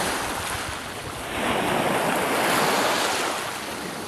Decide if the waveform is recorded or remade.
recorded